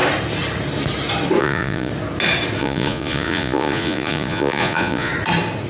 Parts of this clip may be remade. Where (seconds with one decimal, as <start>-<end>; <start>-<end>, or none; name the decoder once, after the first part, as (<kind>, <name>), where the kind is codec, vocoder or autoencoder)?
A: 1.4-1.9 (vocoder, Vocos); 2.6-5.1

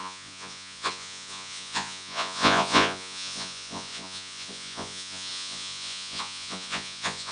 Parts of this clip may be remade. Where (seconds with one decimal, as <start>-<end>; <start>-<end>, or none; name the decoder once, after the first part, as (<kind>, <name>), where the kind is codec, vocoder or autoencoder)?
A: 0.0-7.3 (vocoder, Vocos)

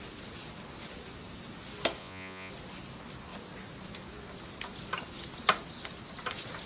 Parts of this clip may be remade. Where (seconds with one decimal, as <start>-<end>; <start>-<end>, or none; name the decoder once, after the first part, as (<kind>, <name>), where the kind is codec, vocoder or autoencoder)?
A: 2.0-2.5 (vocoder, Vocos)